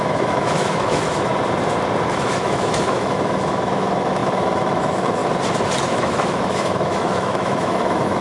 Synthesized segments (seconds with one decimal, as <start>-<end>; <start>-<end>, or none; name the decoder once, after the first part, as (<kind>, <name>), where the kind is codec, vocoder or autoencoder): 0.0-1.3 (autoencoder, DAC-VAE); 2.2-5.2; 5.8-8.2